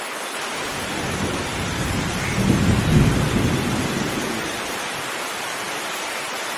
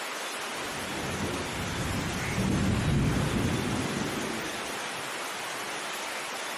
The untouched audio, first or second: second